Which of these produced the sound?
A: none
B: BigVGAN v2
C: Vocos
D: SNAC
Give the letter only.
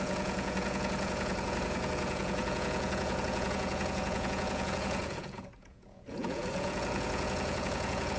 C